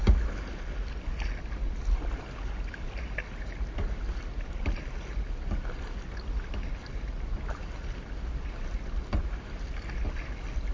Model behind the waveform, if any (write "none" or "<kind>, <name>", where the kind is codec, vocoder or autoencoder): none